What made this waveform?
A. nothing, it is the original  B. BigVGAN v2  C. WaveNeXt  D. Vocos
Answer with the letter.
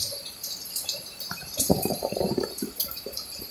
B